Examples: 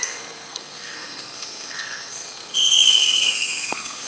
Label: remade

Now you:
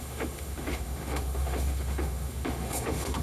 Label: remade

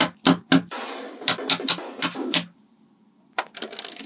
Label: recorded